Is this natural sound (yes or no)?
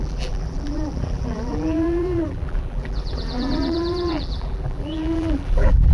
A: no